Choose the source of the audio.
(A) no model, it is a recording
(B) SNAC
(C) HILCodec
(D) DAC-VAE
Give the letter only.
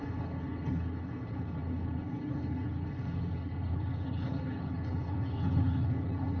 C